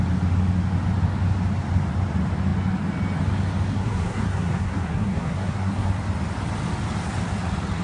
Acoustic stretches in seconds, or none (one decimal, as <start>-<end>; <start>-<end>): 0.0-3.7; 5.9-7.8